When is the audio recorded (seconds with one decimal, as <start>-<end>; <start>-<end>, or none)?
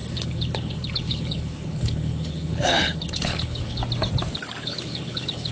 3.8-4.6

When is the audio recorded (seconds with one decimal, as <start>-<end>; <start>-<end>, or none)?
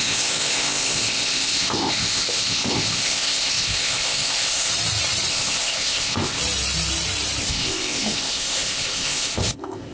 4.7-5.3; 6.4-7.4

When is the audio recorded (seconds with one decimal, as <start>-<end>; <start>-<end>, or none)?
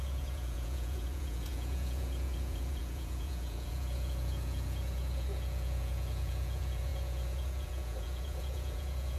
none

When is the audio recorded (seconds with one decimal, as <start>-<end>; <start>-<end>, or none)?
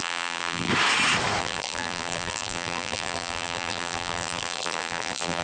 0.7-1.4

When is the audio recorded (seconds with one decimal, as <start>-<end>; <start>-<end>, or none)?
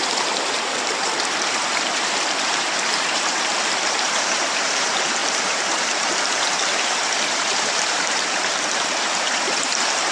none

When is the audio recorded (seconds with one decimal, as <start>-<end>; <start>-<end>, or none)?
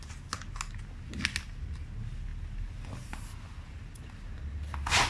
0.0-5.1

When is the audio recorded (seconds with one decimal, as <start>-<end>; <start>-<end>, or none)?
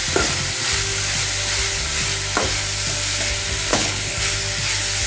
0.0-3.7; 4.2-5.1